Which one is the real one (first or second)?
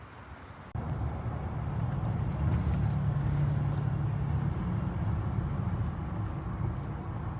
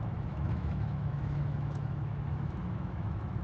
first